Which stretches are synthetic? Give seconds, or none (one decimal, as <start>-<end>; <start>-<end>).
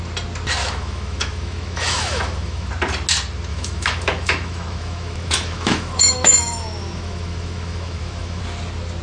0.6-2.7; 3.5-8.4